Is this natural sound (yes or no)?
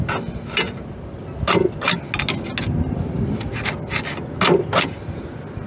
yes